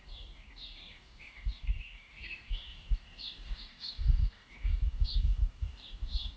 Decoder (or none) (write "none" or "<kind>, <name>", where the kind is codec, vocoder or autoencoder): codec, DAC